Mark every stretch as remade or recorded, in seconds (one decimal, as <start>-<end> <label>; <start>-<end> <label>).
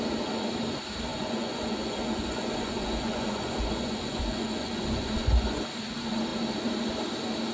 0.0-1.1 recorded; 1.1-5.6 remade; 5.6-7.5 recorded